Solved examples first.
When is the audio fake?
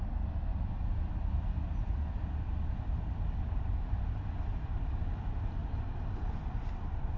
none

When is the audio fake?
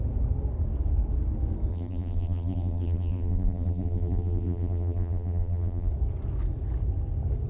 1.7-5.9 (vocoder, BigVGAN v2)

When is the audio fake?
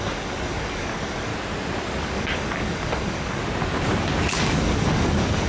0.0-1.3 (codec, DAC); 2.0-3.4; 4.3-5.5